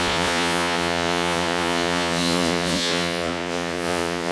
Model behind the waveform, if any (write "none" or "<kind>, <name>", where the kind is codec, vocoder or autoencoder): vocoder, Vocos